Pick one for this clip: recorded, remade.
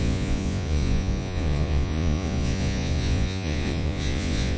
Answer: remade